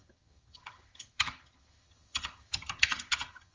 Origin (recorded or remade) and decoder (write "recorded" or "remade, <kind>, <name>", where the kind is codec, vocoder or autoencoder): remade, vocoder, HiFi-GAN